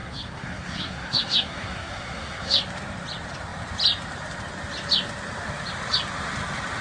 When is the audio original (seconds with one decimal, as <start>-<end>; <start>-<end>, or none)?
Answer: 2.6-6.8